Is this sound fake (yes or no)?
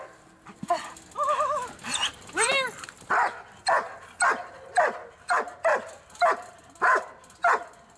no